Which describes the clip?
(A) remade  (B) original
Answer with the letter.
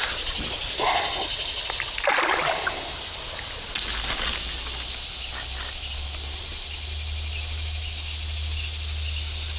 B